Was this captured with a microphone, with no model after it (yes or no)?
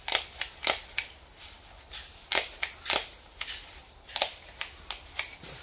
yes